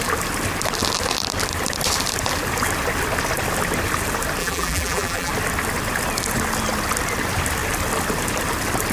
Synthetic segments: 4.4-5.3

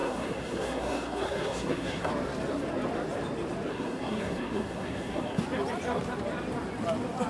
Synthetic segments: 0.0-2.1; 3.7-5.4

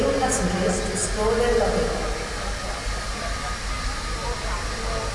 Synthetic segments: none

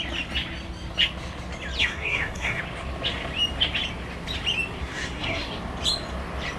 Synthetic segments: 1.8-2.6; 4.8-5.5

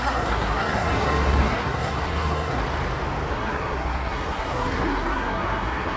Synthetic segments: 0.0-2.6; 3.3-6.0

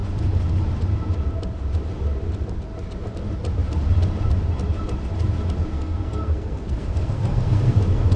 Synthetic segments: 5.7-8.2